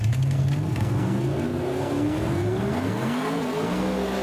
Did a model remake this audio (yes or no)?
yes